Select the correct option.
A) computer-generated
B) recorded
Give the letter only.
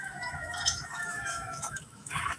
A